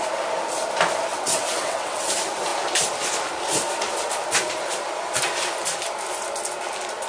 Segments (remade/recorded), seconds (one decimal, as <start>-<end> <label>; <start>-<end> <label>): 0.0-1.1 recorded; 1.1-2.1 remade; 2.1-7.1 recorded